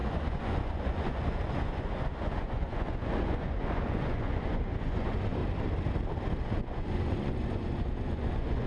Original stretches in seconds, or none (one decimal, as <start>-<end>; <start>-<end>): 5.4-6.6